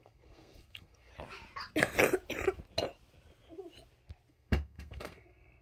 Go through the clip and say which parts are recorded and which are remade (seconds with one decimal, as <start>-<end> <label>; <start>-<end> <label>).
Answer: 0.0-1.1 remade; 1.1-4.3 recorded; 4.3-5.6 remade